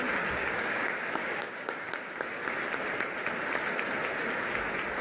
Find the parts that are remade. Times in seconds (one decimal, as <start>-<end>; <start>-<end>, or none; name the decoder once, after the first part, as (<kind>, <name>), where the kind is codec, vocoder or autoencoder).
0.4-1.9 (codec, DAC)